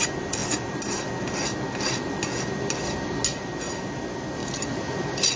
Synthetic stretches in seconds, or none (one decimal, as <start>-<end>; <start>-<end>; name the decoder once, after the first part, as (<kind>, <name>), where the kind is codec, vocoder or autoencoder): none